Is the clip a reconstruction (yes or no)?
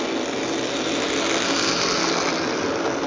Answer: no